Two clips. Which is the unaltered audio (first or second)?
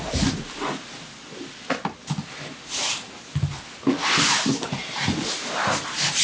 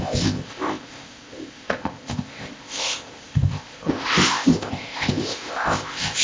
first